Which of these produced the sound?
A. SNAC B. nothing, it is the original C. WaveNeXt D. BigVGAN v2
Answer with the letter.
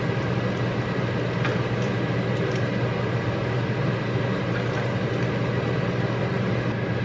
B